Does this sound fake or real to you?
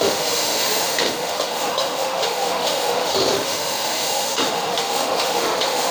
fake